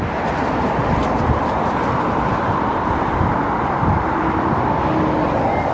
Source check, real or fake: fake